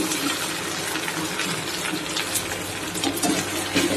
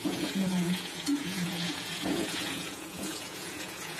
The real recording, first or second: first